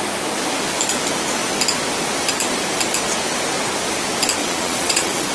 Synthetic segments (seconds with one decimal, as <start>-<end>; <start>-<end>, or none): 4.4-5.3